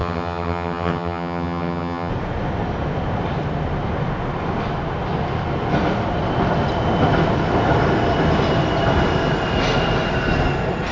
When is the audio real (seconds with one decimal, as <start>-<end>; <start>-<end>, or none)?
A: 2.1-10.9